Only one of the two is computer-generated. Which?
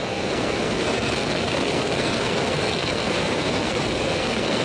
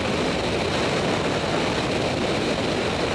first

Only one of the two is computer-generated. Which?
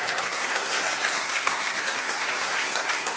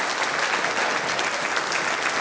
first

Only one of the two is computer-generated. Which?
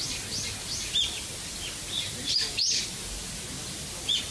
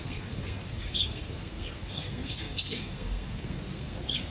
second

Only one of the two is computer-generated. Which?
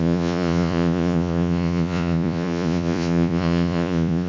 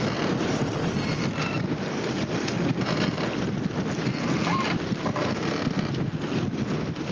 first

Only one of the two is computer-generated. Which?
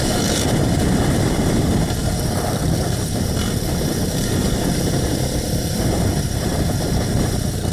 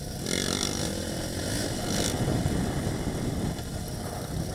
first